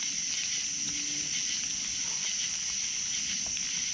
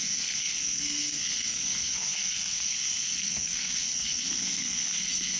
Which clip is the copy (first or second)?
second